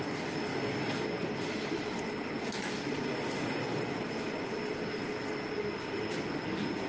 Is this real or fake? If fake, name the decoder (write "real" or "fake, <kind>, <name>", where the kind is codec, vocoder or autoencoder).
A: real